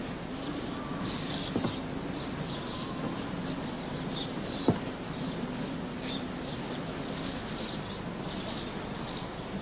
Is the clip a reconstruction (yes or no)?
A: no